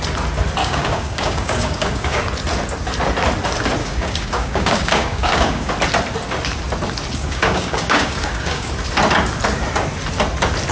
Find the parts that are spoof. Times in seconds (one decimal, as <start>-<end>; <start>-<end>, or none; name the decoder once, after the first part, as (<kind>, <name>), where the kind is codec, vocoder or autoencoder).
0.6-2.2 (codec, DAC); 3.8-5.7; 7.2-8.7